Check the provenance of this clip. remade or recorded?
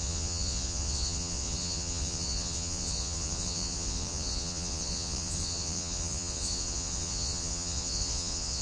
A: remade